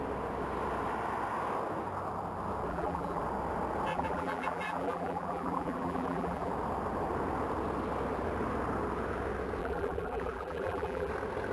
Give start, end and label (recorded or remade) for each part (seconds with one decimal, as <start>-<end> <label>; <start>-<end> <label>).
0.0-2.7 recorded; 2.7-3.2 remade; 3.2-3.9 recorded; 3.9-6.5 remade; 6.5-9.6 recorded; 9.6-11.1 remade; 11.1-11.5 recorded